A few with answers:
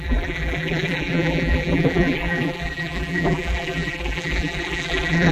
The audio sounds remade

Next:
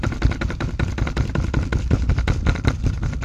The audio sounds recorded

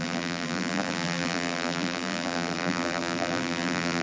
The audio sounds remade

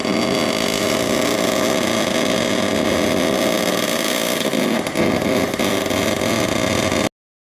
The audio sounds recorded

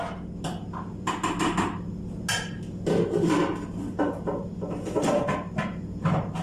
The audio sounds recorded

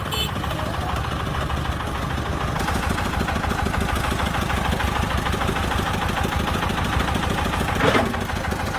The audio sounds recorded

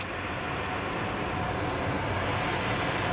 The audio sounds recorded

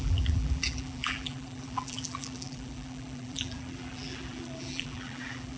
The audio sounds remade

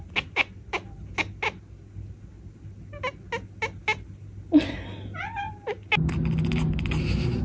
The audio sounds recorded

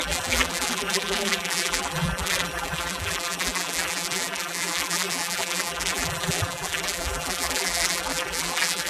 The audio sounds remade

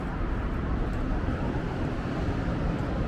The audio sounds remade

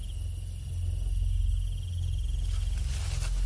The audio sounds recorded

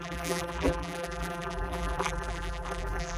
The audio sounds remade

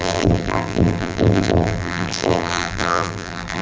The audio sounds remade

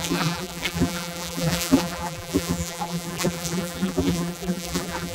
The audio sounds remade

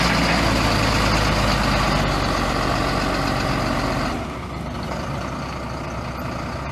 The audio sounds recorded